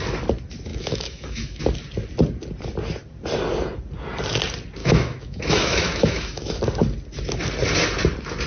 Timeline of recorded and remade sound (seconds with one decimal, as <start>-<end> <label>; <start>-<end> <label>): 0.0-0.7 recorded; 0.7-1.6 remade; 1.6-4.8 recorded; 4.8-6.6 remade; 6.6-8.5 recorded